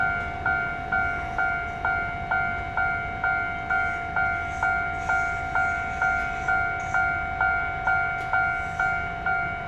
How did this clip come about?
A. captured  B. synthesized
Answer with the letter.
A